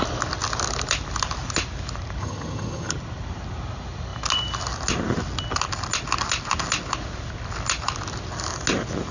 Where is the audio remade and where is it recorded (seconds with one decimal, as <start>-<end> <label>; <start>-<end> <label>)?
0.0-2.2 recorded; 2.2-2.9 remade; 2.9-9.1 recorded

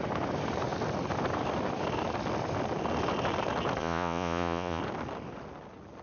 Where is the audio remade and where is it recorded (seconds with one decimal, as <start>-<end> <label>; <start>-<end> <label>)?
0.0-3.8 recorded; 3.8-4.8 remade; 4.8-6.0 recorded